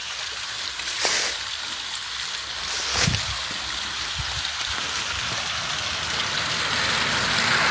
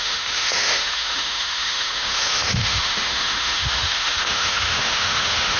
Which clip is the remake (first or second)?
second